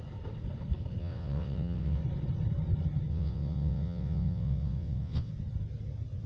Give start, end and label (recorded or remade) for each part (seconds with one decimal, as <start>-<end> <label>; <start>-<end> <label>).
0.0-1.0 recorded; 1.0-2.0 remade; 2.0-3.1 recorded; 3.1-5.3 remade; 5.3-6.3 recorded